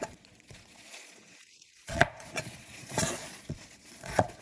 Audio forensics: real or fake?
fake